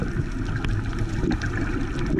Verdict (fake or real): real